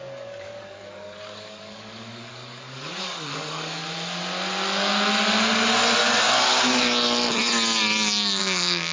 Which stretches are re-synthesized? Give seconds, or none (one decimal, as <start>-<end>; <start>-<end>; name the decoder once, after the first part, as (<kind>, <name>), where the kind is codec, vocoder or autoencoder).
0.0-3.8 (codec, DAC); 8.4-8.9